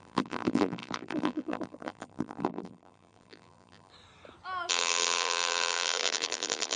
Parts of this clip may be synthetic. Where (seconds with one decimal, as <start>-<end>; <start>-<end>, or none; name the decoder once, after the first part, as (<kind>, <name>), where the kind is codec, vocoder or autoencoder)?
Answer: 0.0-3.9 (vocoder, BigVGAN v2); 4.7-6.8